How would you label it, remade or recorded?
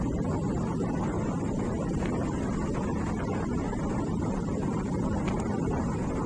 recorded